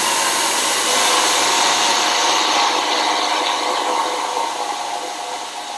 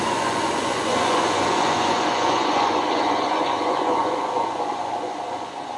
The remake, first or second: second